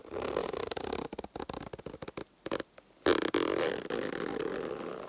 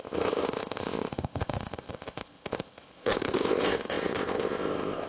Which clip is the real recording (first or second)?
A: first